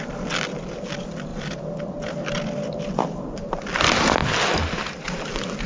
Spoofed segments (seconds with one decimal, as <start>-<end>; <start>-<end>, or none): 0.0-1.3; 1.8-4.2; 5.1-5.7

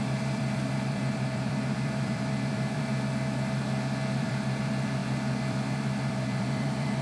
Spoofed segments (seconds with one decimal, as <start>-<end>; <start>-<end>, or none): 0.0-2.9; 4.1-5.0; 5.5-7.0

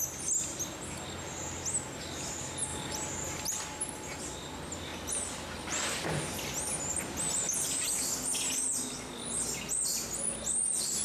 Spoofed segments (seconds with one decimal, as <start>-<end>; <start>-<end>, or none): none

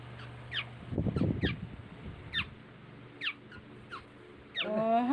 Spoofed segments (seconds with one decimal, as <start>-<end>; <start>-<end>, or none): 0.0-0.8

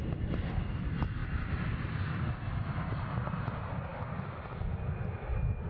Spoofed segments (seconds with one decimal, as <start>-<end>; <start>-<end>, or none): none

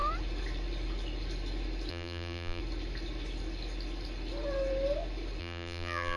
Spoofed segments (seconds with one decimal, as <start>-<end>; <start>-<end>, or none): 1.9-2.6; 5.4-6.2

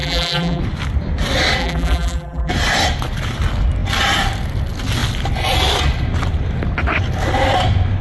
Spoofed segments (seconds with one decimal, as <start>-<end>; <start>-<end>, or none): 0.0-0.6; 1.6-2.5